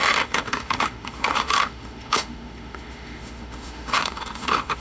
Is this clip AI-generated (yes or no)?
yes